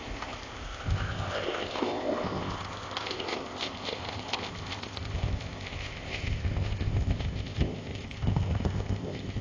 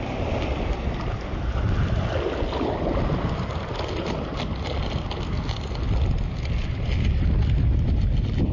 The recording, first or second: second